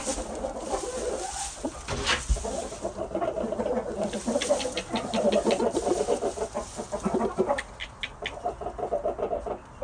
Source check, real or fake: real